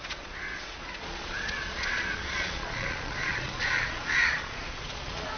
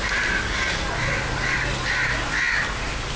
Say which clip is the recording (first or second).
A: second